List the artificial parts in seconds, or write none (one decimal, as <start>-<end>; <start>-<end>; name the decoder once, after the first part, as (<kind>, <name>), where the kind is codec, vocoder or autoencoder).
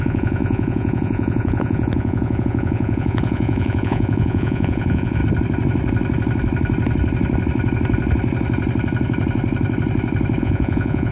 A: 0.0-5.2 (vocoder, Vocos); 10.4-11.1